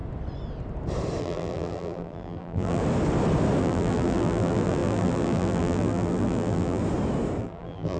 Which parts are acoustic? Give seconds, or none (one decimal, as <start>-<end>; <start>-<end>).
0.0-1.2; 2.8-3.6; 6.8-7.4

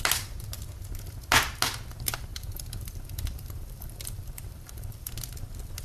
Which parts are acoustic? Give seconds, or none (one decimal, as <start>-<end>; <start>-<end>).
0.0-2.3; 5.1-5.8

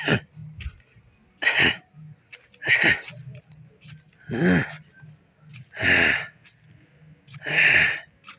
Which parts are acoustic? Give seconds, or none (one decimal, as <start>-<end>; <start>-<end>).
0.0-8.4

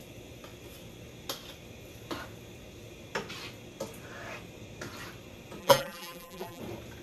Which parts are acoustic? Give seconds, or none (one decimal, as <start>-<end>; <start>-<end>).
0.0-5.6; 6.6-7.0

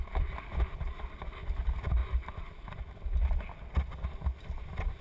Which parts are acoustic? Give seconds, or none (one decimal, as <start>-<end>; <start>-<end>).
0.0-5.0

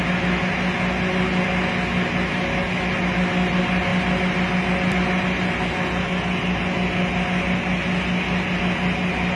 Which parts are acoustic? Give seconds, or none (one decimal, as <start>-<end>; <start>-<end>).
0.0-9.4